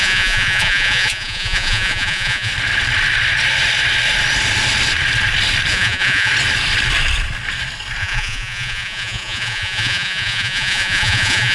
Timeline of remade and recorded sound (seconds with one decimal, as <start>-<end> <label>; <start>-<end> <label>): 0.0-2.5 remade; 2.5-5.7 recorded; 5.7-6.3 remade; 6.3-8.0 recorded; 8.0-11.5 remade